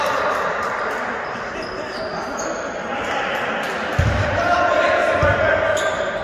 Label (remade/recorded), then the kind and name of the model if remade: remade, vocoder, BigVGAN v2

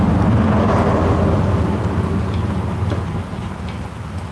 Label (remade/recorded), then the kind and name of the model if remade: recorded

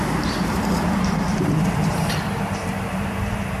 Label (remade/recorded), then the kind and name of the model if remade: remade, vocoder, BigVGAN v2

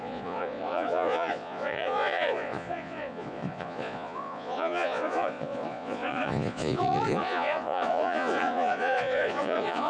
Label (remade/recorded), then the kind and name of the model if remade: remade, vocoder, Vocos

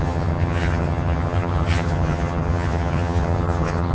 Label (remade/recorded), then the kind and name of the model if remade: remade, vocoder, HiFi-GAN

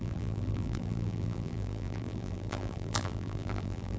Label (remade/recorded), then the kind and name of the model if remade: remade, vocoder, BigVGAN v2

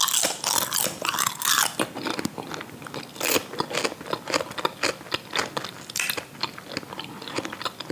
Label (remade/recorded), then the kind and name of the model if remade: recorded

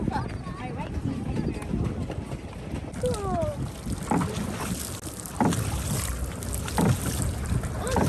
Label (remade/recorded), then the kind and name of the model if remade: recorded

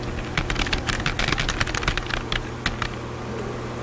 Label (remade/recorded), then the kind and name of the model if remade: recorded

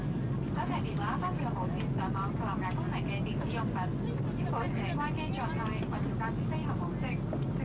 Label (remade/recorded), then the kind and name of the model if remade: recorded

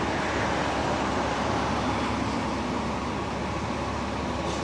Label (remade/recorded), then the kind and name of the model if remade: recorded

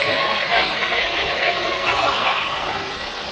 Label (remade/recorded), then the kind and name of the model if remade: remade, codec, SNAC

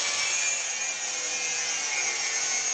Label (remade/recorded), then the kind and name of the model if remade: recorded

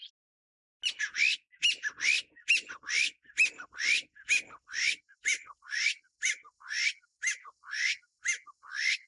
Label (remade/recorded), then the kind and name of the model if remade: recorded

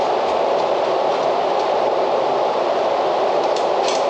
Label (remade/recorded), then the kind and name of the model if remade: recorded